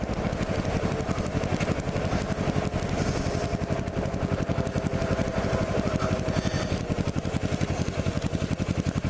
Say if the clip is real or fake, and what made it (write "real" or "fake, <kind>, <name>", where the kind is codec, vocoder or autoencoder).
real